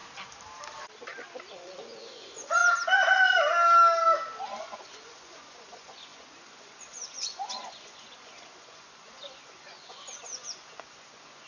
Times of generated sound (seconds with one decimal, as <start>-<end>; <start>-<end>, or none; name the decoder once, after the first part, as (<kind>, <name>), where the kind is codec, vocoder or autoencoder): 1.5-2.6 (vocoder, Vocos); 4.6-11.5